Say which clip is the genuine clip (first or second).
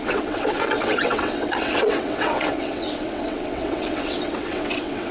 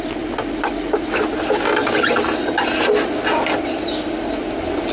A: second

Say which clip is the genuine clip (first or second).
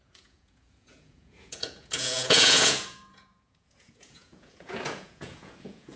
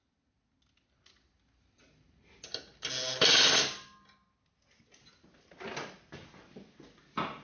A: second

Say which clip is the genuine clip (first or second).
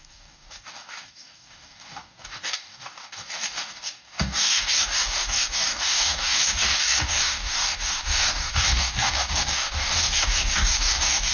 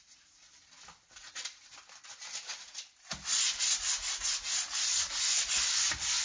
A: second